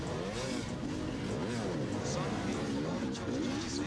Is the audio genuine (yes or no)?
yes